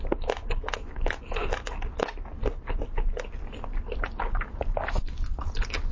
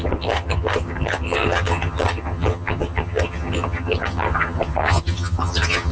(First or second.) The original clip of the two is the first